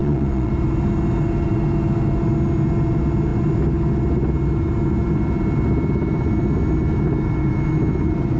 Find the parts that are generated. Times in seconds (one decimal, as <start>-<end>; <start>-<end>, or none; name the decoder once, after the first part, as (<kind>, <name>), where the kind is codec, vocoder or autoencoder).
0.0-0.5 (vocoder, Vocos)